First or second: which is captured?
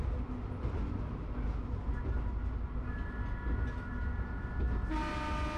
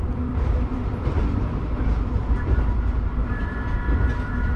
first